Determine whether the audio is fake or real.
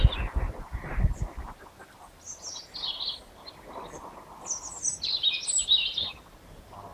real